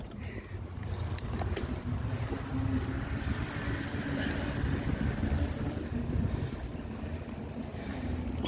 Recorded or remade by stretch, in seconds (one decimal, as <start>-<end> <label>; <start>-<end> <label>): 0.0-2.5 remade; 2.5-7.4 recorded; 7.4-8.5 remade